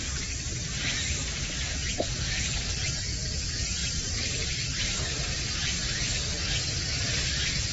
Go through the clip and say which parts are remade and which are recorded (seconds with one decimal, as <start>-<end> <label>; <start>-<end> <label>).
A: 0.0-3.8 recorded; 3.8-5.2 remade; 5.2-7.7 recorded